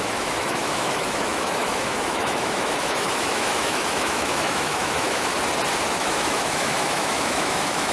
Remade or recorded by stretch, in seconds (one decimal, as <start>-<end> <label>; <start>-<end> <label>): 0.0-5.3 remade; 5.3-5.9 recorded; 5.9-7.9 remade